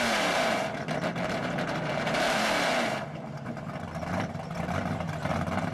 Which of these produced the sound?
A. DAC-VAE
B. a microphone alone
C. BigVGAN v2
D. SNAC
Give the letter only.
C